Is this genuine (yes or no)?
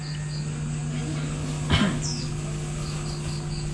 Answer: yes